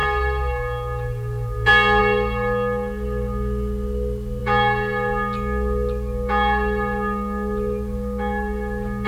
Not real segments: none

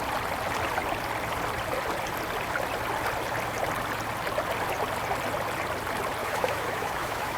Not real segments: 6.2-7.4 (autoencoder, DAC-VAE)

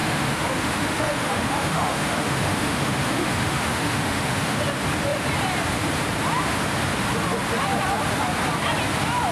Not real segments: 0.0-4.6 (autoencoder, DAC-VAE)

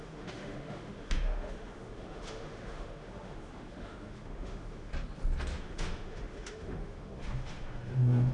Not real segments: 0.0-4.9 (autoencoder, DAC-VAE); 5.6-8.3

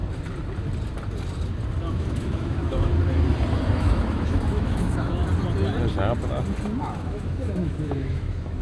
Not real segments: 1.9-2.9 (autoencoder, DAC-VAE); 3.8-5.2; 6.8-8.6